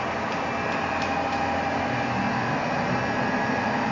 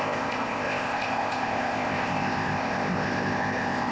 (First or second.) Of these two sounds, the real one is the first